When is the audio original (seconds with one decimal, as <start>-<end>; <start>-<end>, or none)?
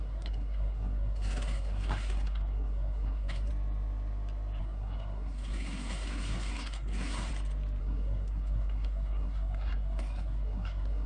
3.5-4.6; 7.3-7.8